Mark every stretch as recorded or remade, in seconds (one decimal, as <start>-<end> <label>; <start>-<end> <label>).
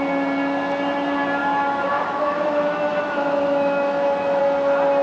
0.0-1.4 recorded; 1.4-4.4 remade; 4.4-5.0 recorded